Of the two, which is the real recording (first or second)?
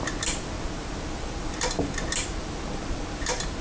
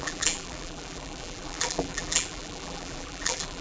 first